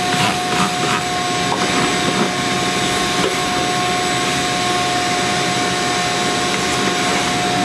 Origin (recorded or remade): recorded